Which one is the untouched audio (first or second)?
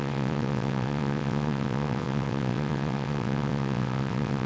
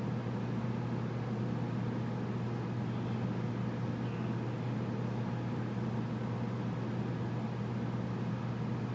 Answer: second